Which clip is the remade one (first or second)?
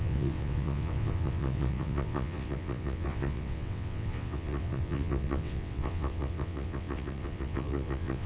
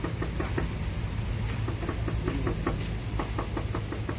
first